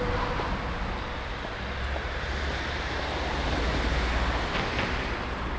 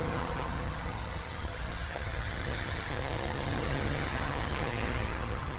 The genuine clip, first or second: first